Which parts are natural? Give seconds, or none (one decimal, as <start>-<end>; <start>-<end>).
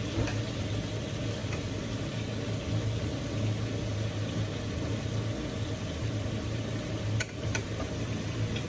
0.0-1.4; 2.0-8.7